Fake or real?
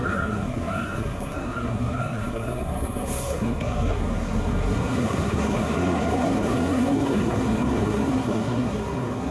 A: fake